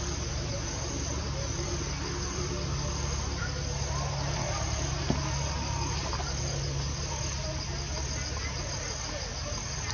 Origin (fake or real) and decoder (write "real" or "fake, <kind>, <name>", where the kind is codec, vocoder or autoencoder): real